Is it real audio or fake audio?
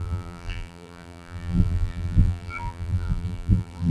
fake